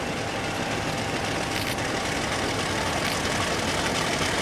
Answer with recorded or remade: remade